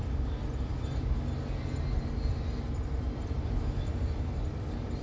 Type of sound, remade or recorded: recorded